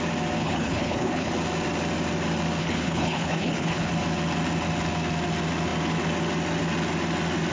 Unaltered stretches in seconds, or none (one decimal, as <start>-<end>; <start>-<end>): 0.0-0.4; 1.3-2.6; 3.9-7.5